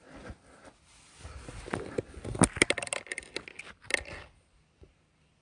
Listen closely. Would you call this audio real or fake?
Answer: real